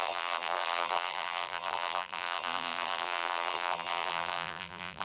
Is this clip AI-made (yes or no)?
yes